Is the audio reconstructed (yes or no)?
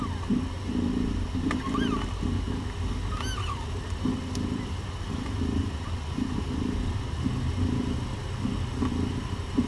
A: no